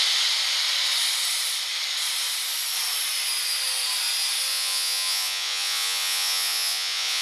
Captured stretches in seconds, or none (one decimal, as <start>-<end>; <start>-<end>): 0.0-4.5